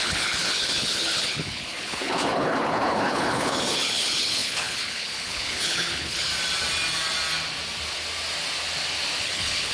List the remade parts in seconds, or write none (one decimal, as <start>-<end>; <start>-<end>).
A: 0.0-6.3; 9.2-9.7